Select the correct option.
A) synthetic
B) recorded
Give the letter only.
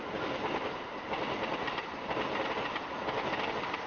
B